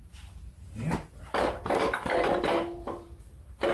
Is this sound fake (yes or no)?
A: yes